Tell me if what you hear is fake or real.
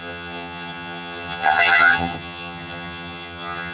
fake